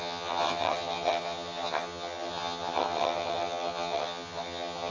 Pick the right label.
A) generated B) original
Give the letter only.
A